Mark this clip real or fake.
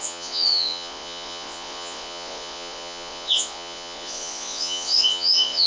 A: fake